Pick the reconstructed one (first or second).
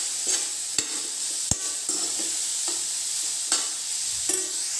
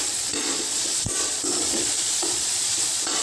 second